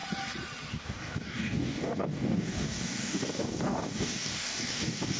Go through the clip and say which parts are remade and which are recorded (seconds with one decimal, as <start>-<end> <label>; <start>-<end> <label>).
0.0-0.7 recorded; 0.7-5.2 remade